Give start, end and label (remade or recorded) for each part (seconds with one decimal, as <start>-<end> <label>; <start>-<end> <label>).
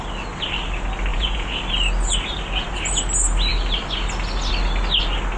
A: 0.0-1.1 recorded; 1.1-1.6 remade; 1.6-5.4 recorded